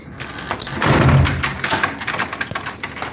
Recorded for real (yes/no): yes